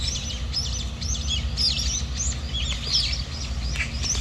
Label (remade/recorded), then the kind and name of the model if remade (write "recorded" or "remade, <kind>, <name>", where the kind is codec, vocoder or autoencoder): recorded